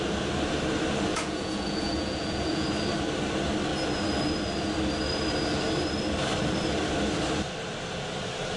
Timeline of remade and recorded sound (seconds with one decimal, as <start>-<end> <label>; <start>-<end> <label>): 0.0-1.1 recorded; 1.1-2.7 remade; 2.7-8.6 recorded